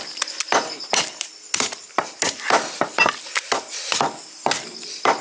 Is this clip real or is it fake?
real